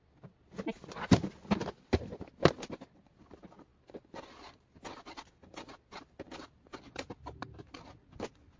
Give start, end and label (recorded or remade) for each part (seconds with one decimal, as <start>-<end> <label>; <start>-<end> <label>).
0.0-8.6 recorded